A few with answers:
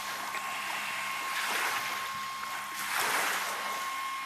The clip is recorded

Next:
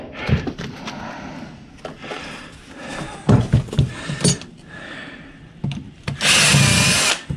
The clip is recorded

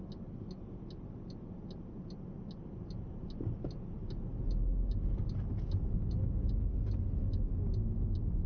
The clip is recorded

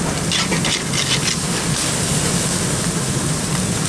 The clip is recorded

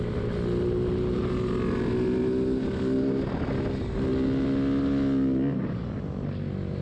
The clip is recorded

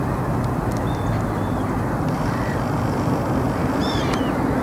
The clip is recorded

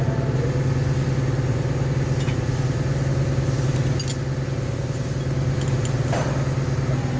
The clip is recorded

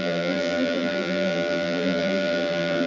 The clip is remade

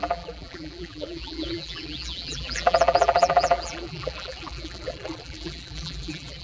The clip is remade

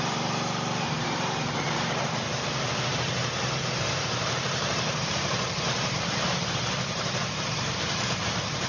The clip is remade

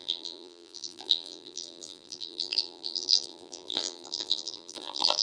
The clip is remade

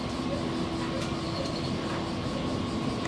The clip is recorded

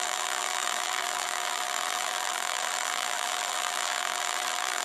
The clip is remade